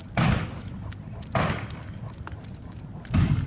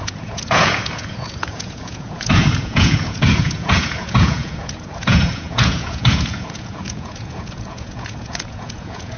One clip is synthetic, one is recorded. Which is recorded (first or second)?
first